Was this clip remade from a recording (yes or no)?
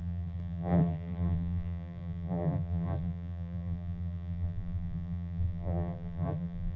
yes